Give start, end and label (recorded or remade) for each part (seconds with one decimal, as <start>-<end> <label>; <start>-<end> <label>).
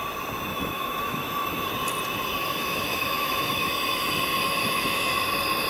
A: 0.0-0.5 recorded; 0.5-1.7 remade; 1.7-2.4 recorded; 2.4-3.7 remade; 3.7-4.3 recorded; 4.3-5.1 remade; 5.1-5.7 recorded